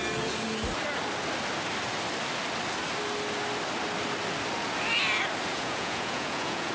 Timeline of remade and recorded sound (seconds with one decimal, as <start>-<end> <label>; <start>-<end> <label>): 0.0-5.5 recorded; 5.5-6.7 remade